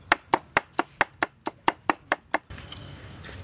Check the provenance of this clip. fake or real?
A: real